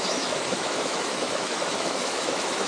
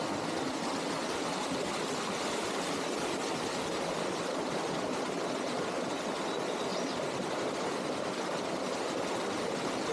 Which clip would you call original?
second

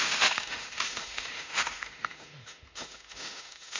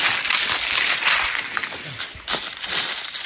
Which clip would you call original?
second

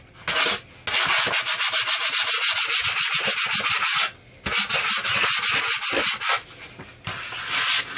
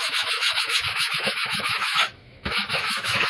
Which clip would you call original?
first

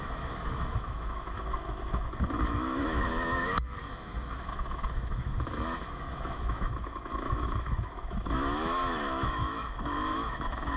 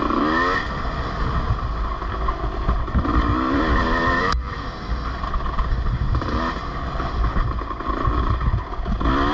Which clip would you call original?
second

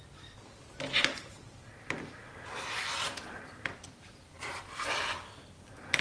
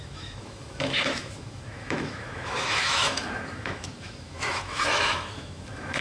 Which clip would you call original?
first